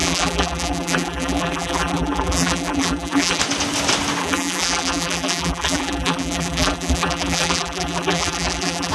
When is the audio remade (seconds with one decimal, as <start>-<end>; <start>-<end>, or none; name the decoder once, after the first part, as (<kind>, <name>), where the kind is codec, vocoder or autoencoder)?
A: 0.0-3.4 (vocoder, BigVGAN v2); 4.2-8.9